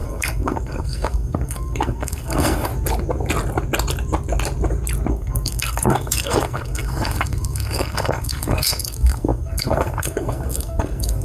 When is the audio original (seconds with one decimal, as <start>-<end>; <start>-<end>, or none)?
2.7-5.1